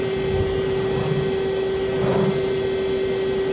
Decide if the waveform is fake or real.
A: real